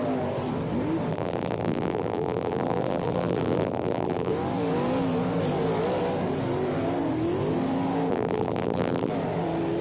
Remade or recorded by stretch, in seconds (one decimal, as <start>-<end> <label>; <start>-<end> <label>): 0.0-1.1 recorded; 1.1-4.3 remade; 4.3-8.1 recorded; 8.1-9.1 remade; 9.1-9.8 recorded